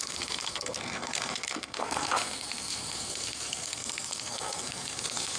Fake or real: fake